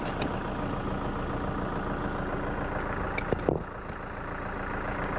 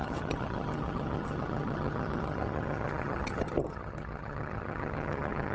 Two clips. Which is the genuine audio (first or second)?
first